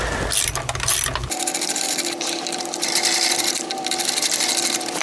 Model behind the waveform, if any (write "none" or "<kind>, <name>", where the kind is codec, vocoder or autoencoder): vocoder, BigVGAN v2